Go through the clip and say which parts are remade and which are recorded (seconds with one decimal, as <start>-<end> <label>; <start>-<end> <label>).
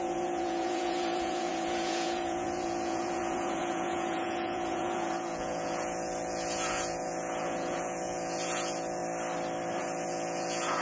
0.0-9.0 remade; 9.0-9.8 recorded; 9.8-10.8 remade